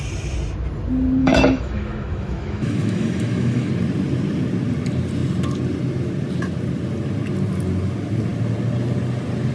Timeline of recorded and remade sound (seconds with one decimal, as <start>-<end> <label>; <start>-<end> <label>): 0.0-1.2 recorded; 1.2-3.7 remade; 3.7-9.5 recorded